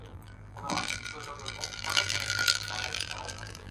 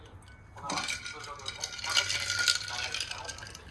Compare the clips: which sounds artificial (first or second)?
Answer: first